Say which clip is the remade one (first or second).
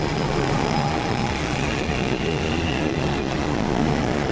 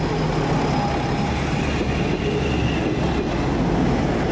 first